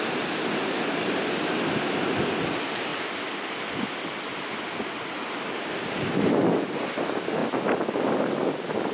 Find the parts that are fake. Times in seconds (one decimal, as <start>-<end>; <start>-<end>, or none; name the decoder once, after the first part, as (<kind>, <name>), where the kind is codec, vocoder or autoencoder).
none